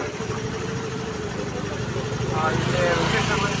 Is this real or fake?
real